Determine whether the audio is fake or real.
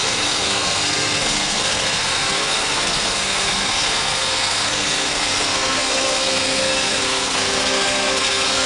fake